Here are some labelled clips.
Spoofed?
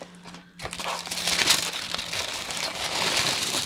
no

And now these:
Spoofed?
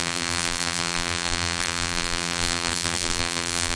yes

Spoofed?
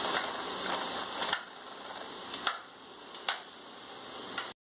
no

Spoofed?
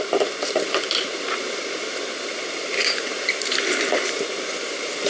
yes